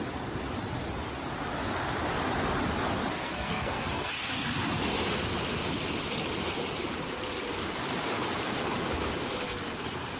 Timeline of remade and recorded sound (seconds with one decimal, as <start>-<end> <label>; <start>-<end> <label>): 0.0-3.1 recorded; 3.1-4.1 remade; 4.1-10.2 recorded